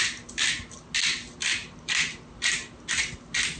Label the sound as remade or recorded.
recorded